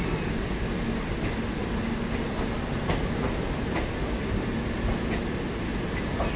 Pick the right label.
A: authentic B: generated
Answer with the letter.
A